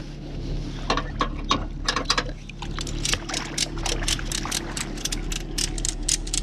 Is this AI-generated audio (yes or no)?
no